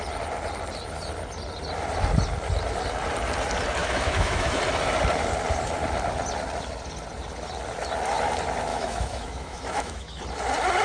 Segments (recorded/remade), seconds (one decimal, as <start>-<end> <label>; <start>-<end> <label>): 0.0-3.8 recorded; 3.8-4.6 remade; 4.6-8.7 recorded; 8.7-10.2 remade; 10.2-10.8 recorded